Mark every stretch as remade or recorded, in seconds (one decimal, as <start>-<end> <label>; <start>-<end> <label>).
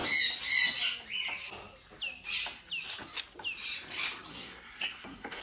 0.0-4.3 recorded; 4.3-5.4 remade